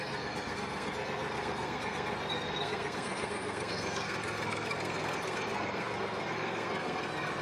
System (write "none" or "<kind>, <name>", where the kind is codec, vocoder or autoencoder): codec, SNAC